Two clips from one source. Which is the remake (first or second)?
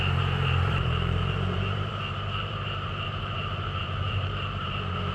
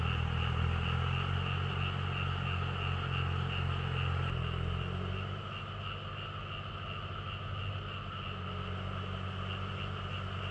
first